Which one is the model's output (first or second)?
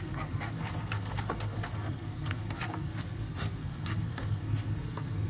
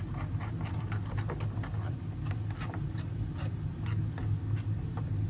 first